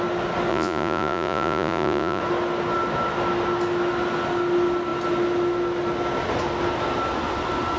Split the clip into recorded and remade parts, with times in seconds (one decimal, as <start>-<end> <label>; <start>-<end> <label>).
0.0-0.5 recorded; 0.5-2.2 remade; 2.2-7.8 recorded